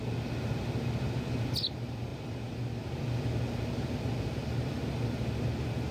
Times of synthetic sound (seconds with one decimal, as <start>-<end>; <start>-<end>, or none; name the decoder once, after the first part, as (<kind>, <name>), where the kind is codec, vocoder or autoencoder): none